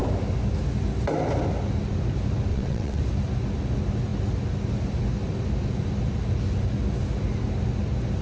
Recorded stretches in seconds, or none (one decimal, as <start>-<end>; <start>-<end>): 0.0-2.5; 3.0-8.2